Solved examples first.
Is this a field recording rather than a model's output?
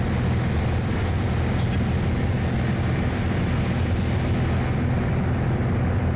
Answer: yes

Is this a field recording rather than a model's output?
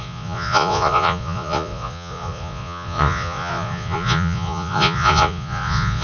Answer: no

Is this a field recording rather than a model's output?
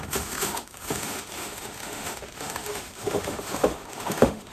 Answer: no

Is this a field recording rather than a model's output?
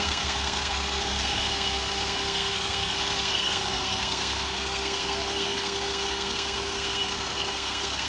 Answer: no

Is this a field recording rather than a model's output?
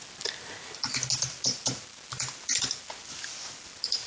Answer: yes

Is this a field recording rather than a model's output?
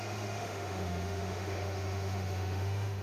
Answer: no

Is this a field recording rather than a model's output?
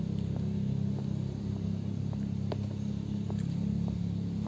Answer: yes